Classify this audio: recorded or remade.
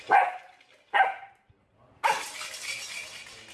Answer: recorded